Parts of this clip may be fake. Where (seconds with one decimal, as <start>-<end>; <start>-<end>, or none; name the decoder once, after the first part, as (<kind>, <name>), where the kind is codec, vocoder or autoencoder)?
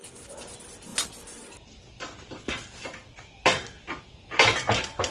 none